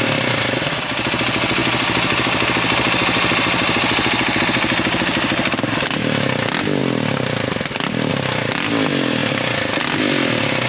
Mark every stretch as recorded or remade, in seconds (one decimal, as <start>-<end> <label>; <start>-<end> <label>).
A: 0.0-10.7 recorded